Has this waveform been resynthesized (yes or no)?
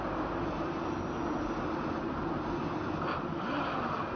no